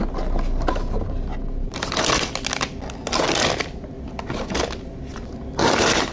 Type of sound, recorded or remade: recorded